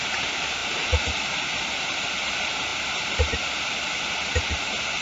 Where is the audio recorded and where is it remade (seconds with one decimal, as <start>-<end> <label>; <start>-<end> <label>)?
0.0-0.6 recorded; 0.6-1.2 remade; 1.2-5.0 recorded